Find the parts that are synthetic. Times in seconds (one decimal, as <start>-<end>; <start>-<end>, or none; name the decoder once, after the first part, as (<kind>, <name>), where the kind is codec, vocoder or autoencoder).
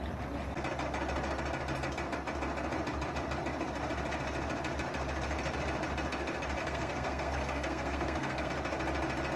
6.6-8.5 (codec, SNAC)